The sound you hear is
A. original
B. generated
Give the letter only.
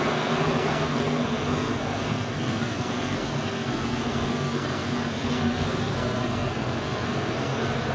B